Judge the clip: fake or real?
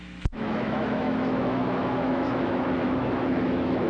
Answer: fake